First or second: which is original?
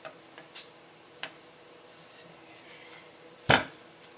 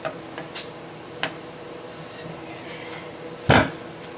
second